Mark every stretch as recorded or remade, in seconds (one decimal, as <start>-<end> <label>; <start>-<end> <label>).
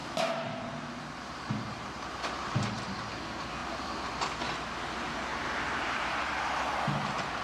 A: 0.0-3.1 remade; 3.1-5.3 recorded; 5.3-5.9 remade; 5.9-7.4 recorded